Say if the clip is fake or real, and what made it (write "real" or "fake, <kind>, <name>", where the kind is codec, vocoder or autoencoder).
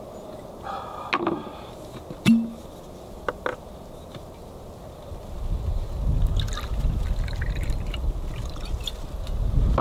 real